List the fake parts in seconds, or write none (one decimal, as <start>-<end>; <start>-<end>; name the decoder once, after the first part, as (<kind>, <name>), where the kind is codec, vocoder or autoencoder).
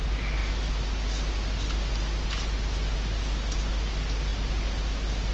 none